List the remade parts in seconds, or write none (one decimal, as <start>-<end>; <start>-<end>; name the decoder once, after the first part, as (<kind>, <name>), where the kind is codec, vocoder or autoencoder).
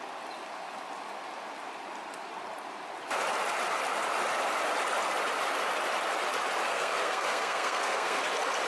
6.6-8.2 (codec, SNAC)